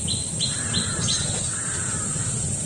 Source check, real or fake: real